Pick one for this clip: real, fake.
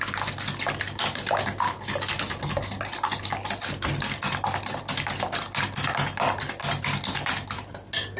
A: real